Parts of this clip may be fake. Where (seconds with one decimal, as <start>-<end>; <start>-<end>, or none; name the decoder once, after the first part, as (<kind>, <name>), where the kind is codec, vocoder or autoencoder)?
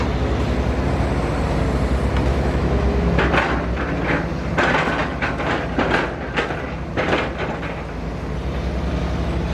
2.3-3.3 (autoencoder, DAC-VAE)